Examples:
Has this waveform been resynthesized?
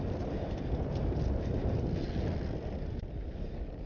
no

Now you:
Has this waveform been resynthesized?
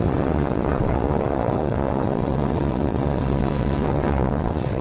yes